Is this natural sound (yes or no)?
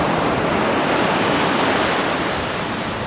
yes